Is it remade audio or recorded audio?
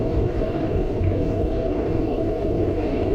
remade